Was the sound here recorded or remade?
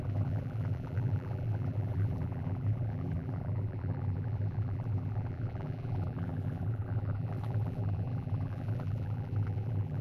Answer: remade